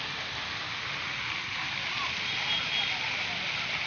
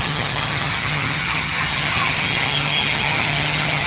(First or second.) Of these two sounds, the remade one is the second